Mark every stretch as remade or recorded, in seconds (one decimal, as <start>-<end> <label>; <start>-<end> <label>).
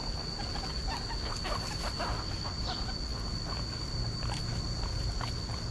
0.0-5.7 recorded